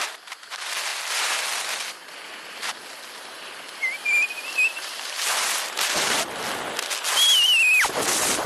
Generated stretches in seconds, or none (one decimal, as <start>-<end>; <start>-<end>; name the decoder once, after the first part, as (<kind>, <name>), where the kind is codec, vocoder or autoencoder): none